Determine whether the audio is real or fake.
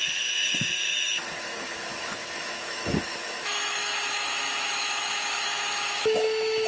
fake